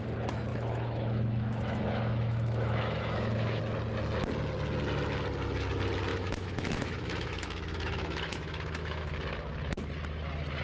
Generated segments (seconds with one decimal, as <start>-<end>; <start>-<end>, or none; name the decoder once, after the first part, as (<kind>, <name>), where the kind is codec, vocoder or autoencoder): 0.5-3.6 (autoencoder, DAC-VAE); 6.1-9.0

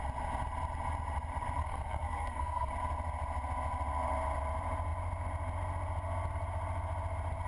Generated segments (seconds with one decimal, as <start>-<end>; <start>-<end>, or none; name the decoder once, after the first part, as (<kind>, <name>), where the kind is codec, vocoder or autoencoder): 1.6-2.7 (codec, SNAC)